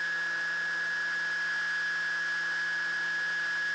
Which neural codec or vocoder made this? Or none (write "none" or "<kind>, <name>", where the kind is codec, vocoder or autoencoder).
none